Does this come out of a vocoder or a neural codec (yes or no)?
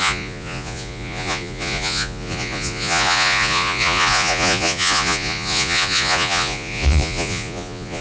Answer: yes